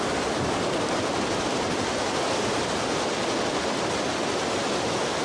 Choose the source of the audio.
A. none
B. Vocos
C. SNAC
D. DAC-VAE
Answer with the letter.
A